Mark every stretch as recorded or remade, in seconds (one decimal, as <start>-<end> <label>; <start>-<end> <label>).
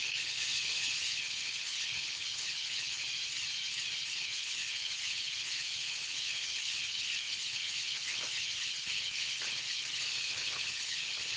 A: 0.0-3.0 remade; 3.0-4.1 recorded; 4.1-11.4 remade